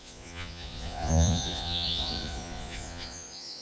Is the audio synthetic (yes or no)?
yes